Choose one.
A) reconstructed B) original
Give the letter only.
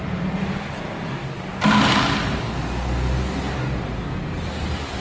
B